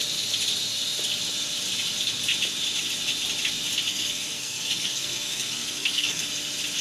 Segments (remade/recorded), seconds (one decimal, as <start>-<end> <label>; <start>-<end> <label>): 0.0-3.9 recorded; 3.9-6.3 remade; 6.3-6.8 recorded